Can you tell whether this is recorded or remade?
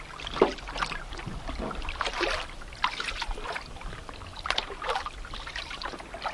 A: recorded